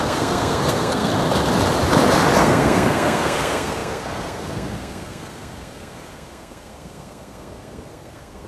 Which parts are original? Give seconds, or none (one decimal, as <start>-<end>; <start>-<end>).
1.1-2.4